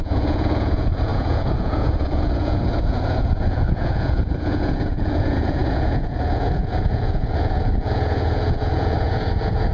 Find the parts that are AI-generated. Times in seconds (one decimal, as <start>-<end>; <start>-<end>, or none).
0.0-9.7